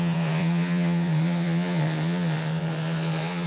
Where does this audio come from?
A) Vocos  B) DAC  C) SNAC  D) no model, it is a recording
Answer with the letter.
A